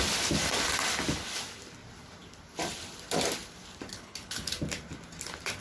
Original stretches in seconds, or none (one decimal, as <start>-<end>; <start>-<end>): 0.0-3.9; 4.5-5.6